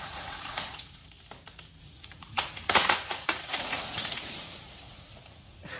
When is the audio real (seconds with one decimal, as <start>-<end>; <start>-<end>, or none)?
1.0-1.8